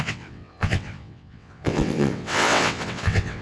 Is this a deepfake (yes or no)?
yes